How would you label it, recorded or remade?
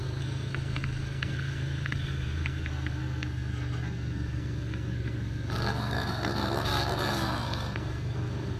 remade